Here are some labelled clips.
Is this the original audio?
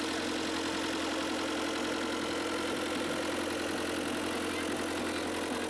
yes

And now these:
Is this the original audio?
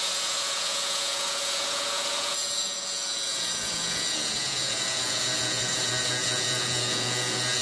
no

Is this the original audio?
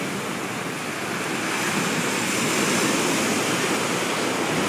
yes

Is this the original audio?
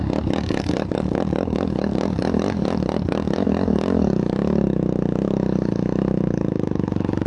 no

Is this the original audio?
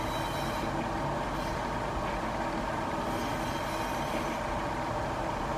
yes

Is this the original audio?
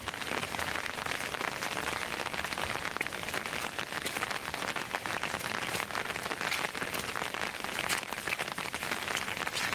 yes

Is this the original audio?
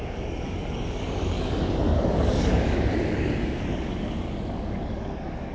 no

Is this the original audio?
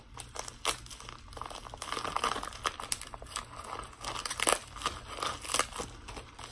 yes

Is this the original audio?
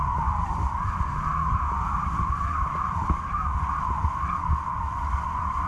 yes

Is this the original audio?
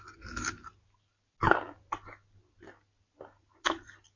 yes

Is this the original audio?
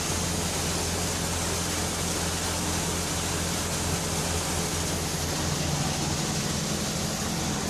yes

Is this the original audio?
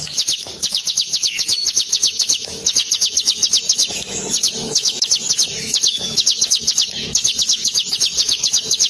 no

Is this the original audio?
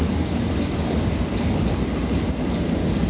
yes